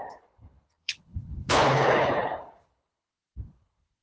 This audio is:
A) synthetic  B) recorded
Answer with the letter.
A